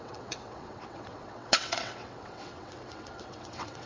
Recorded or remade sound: remade